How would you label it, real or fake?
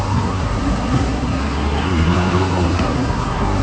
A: fake